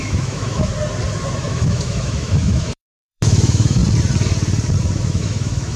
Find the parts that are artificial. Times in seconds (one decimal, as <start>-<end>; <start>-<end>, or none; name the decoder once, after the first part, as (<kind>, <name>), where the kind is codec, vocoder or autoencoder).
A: 0.0-0.7 (autoencoder, DAC-VAE); 1.4-3.8; 5.0-5.8